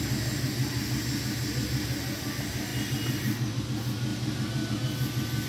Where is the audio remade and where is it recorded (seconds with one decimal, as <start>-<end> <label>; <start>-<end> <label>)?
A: 0.0-4.1 recorded; 4.1-4.7 remade; 4.7-5.5 recorded